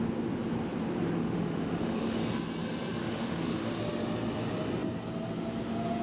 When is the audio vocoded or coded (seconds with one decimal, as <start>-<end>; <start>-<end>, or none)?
1.2-2.2; 3.0-3.8